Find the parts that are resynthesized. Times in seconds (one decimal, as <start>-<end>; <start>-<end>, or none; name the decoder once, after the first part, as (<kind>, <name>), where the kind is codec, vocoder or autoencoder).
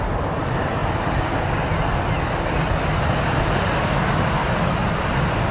none